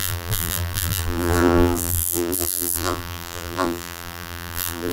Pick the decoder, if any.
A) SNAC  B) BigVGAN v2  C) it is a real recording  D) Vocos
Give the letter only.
B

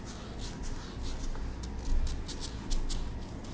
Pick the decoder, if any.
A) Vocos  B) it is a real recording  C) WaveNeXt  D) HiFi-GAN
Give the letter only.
B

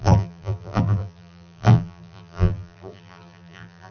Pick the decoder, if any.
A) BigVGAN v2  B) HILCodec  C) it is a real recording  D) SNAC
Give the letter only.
A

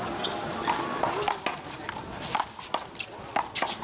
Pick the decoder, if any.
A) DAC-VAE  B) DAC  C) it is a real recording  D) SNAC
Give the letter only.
C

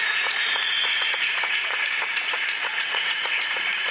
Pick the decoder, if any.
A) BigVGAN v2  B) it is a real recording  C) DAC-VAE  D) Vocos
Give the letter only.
D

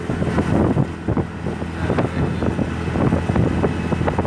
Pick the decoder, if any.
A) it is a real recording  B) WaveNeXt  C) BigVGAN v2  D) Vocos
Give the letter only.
A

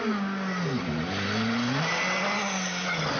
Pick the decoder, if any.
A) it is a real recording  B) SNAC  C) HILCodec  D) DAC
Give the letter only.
A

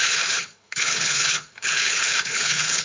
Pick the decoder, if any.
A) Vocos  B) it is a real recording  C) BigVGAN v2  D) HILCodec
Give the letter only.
D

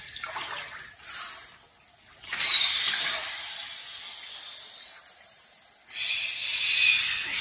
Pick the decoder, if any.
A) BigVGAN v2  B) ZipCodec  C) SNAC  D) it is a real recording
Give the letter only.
D